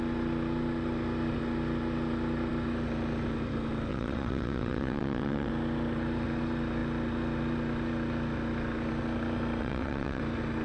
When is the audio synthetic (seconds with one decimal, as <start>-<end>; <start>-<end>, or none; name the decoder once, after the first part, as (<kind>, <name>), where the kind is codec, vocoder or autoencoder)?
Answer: 3.9-5.5 (vocoder, WaveNeXt); 9.6-10.2

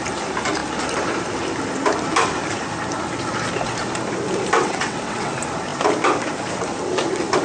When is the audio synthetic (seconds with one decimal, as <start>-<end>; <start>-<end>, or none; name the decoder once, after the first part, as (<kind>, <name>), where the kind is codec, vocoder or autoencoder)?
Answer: 4.6-5.3 (vocoder, WaveNeXt)

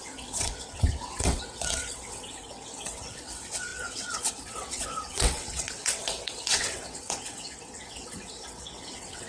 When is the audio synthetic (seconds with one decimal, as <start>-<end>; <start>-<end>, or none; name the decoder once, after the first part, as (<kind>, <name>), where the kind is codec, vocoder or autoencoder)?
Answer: 0.0-9.3 (vocoder, WaveNeXt)